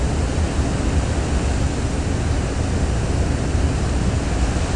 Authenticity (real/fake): real